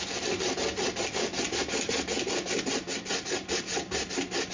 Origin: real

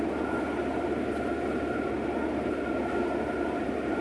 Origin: real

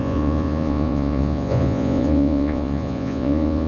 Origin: fake